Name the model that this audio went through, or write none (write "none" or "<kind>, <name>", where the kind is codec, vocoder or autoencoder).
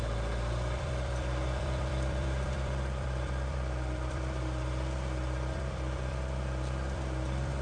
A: vocoder, BigVGAN v2